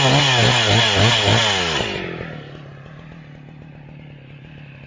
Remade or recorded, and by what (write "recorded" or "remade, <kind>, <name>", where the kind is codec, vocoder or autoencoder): recorded